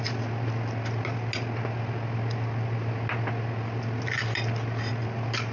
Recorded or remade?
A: recorded